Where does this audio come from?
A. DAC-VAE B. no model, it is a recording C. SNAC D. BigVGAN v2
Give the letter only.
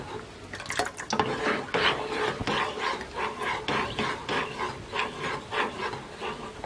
B